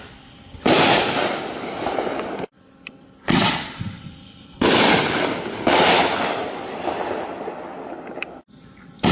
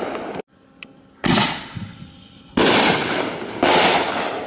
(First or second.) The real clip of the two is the second